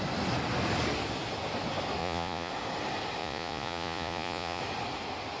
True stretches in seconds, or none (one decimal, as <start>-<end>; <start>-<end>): 0.0-2.0; 2.5-3.2; 4.6-5.4